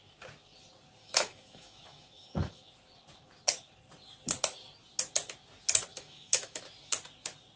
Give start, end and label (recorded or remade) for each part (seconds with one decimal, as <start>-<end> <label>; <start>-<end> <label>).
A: 0.0-1.0 recorded; 1.0-2.7 remade; 2.7-5.9 recorded; 5.9-6.6 remade; 6.6-7.6 recorded